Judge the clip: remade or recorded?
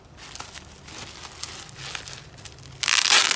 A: recorded